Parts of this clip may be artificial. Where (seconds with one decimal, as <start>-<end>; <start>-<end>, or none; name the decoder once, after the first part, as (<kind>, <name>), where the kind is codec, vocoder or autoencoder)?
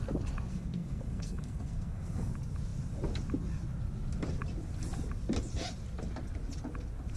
0.5-2.3 (codec, SNAC)